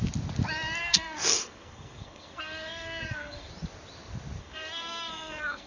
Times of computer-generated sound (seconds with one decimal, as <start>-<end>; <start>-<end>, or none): 0.8-3.5; 4.4-5.7